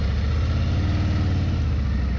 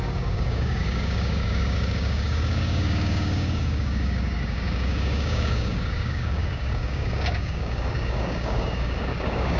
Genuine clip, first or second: first